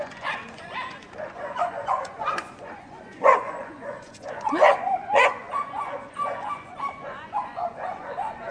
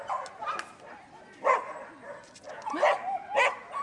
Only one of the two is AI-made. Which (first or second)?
first